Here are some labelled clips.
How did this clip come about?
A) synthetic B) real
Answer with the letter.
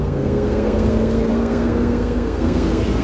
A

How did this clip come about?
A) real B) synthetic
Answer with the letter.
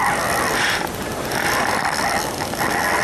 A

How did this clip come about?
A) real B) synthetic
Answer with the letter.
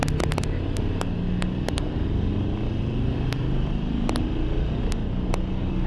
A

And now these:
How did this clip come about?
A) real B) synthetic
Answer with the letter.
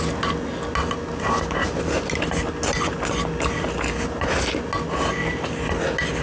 A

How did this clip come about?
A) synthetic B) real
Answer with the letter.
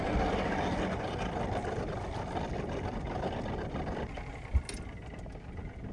B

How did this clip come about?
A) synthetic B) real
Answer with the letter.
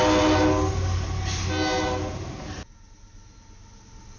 B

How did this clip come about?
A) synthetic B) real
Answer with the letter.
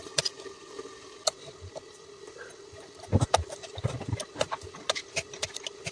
A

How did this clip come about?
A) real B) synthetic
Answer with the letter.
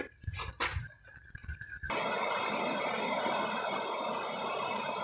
A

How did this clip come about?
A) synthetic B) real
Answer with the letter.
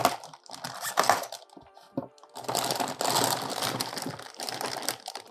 A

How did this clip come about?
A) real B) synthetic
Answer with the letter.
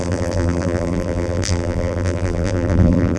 B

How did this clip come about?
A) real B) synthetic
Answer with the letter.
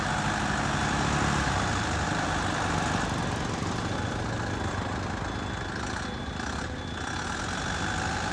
A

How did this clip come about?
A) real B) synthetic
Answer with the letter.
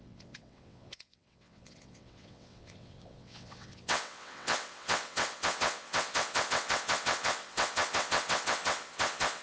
B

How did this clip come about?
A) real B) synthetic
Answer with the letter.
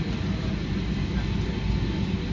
A